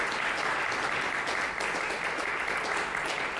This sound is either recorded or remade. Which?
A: recorded